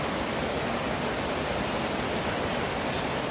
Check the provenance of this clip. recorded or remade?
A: recorded